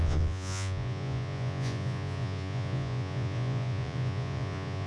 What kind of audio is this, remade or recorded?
remade